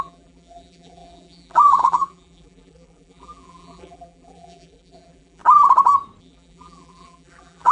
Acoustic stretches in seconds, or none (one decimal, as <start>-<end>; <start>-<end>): 5.4-6.2